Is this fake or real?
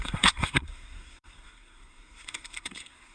fake